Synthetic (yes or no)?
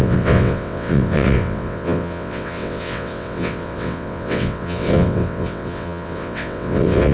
yes